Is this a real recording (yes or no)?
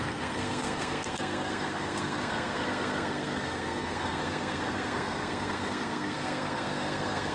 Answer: no